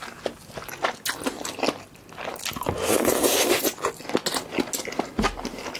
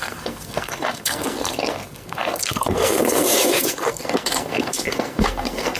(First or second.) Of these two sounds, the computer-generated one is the second